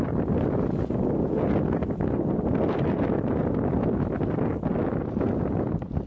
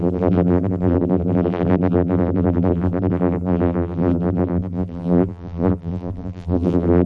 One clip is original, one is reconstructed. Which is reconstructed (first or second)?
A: second